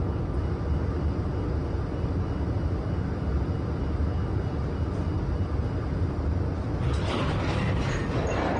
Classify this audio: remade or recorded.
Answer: recorded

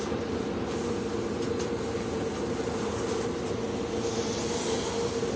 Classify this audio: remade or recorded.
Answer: recorded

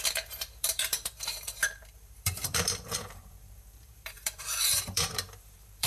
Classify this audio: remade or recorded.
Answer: remade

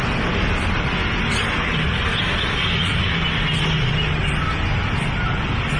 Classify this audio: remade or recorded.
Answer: recorded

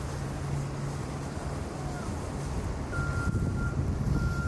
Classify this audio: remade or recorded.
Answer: recorded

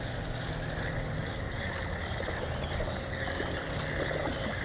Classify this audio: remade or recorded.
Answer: recorded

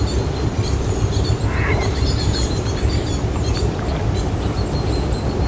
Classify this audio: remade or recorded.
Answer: recorded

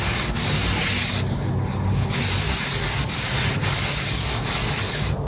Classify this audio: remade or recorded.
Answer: recorded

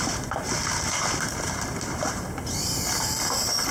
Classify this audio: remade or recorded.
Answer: remade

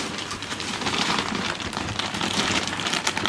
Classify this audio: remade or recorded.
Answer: remade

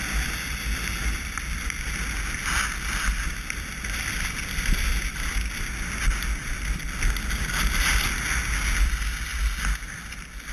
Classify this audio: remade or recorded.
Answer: recorded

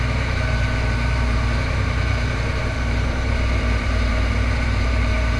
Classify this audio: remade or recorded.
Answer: remade